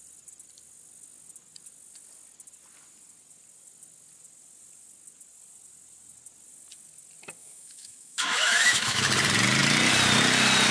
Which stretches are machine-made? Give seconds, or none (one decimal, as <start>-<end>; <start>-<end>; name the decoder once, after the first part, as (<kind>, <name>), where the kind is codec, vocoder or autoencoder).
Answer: 7.4-9.0 (autoencoder, DAC-VAE)